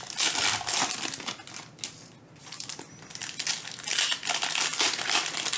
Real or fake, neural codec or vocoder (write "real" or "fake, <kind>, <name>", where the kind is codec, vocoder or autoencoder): real